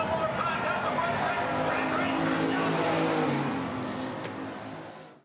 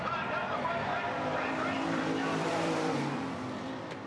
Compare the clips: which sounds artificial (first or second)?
second